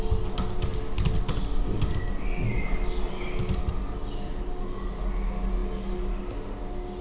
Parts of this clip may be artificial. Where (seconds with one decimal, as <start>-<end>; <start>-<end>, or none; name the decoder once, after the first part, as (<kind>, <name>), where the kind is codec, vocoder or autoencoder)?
none